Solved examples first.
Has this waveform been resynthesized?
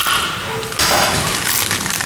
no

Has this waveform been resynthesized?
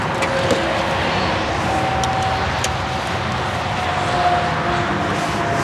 no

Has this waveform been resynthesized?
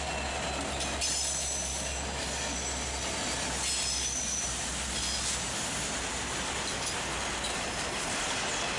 no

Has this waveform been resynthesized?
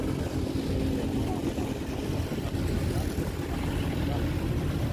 no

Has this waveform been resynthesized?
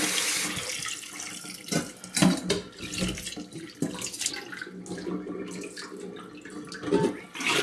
no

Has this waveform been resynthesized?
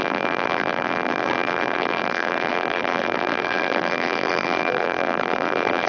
yes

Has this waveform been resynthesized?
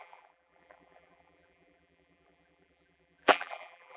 yes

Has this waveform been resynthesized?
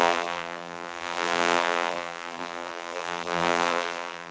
yes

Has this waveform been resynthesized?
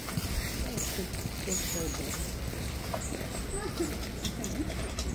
no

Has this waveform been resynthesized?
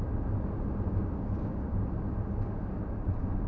no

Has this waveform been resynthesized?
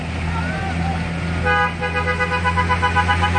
no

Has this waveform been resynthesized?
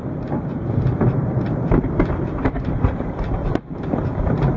yes